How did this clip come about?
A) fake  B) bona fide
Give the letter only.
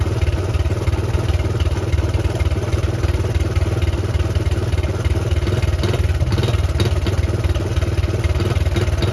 B